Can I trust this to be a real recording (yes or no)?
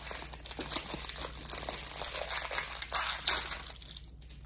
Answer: yes